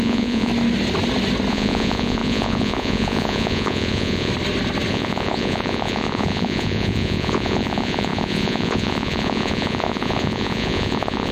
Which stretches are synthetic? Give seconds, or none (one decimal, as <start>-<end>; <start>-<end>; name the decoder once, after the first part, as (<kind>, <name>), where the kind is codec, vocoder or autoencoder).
0.0-0.5 (vocoder, Vocos); 1.5-4.3; 4.9-11.3